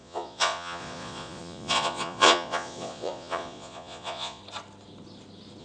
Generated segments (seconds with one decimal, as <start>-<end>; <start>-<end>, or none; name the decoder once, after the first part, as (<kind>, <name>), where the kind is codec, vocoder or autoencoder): 0.0-4.4 (vocoder, Vocos)